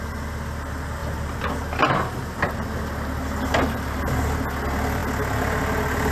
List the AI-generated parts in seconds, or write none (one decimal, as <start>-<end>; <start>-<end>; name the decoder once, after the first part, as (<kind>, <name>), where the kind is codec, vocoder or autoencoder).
1.0-1.8 (vocoder, BigVGAN v2)